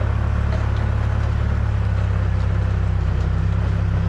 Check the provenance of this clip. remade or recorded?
recorded